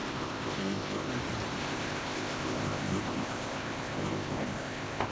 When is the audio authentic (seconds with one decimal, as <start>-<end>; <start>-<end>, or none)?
1.1-1.6